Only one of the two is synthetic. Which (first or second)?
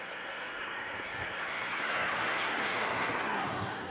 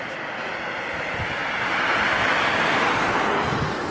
first